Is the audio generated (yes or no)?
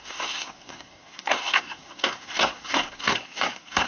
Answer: yes